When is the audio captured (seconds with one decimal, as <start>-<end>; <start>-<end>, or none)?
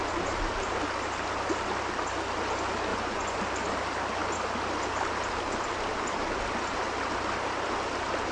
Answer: 0.0-2.9; 3.4-8.3